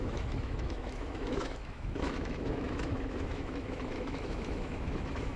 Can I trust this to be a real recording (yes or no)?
no